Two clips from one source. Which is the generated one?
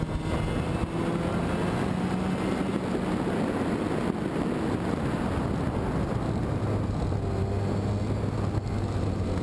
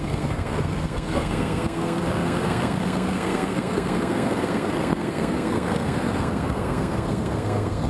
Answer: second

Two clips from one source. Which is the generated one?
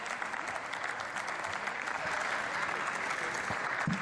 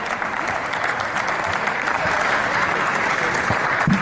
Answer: second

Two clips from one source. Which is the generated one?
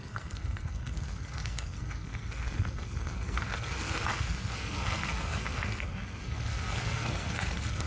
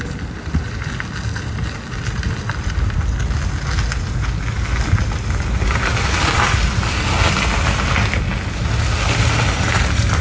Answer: first